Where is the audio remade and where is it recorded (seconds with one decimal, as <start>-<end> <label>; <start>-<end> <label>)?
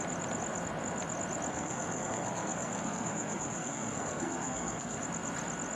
0.0-1.5 recorded; 1.5-5.0 remade; 5.0-5.8 recorded